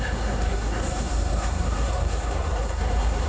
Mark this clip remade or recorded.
remade